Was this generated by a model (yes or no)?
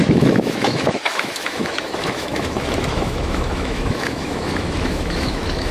yes